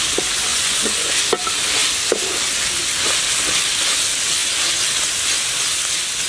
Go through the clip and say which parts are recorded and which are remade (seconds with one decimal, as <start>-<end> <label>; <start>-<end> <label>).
0.0-0.5 recorded; 0.5-1.1 remade; 1.1-6.3 recorded